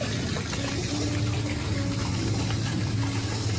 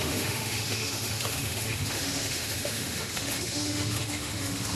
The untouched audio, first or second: first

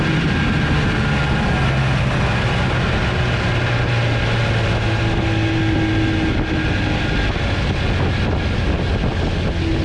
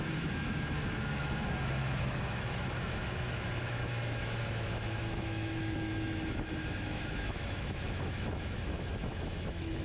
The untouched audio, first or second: first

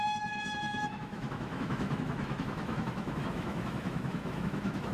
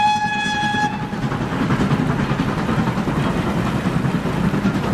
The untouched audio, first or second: second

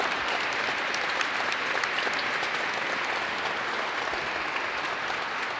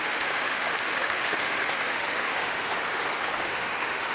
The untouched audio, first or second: first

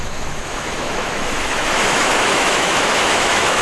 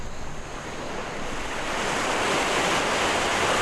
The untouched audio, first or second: second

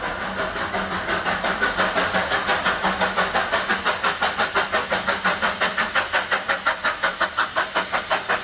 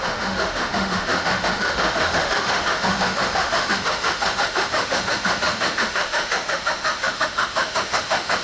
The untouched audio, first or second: first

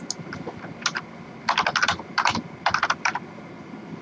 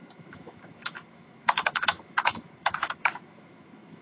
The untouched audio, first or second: first